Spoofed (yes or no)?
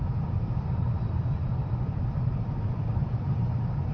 yes